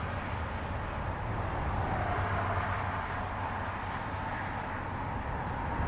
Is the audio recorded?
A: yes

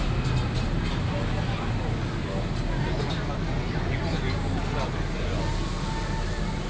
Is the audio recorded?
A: yes